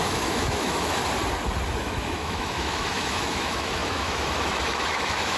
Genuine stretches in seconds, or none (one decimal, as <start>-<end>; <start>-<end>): 1.0-1.8